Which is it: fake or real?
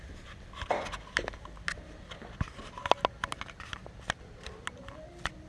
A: real